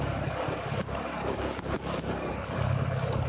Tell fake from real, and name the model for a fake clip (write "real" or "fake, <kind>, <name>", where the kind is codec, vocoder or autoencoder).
fake, codec, DAC